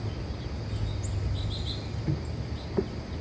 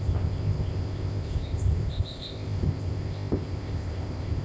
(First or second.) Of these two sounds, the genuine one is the first